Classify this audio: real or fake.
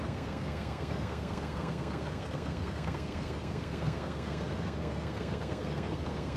fake